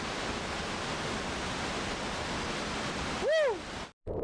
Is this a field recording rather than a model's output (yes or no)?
yes